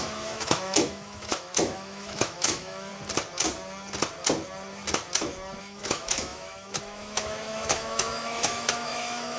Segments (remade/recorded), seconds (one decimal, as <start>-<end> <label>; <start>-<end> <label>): 0.0-2.9 remade; 2.9-5.6 recorded; 5.6-9.4 remade